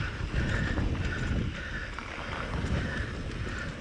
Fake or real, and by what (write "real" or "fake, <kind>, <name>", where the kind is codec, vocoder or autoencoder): real